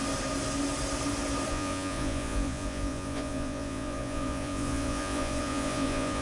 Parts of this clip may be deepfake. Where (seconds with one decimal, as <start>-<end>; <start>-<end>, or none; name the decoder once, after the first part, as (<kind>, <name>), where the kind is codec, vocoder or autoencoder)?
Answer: 1.5-6.2 (vocoder, Vocos)